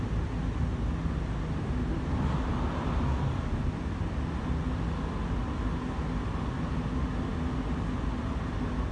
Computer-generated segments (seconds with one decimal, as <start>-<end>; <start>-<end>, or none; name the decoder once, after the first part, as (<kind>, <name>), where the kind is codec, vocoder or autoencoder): none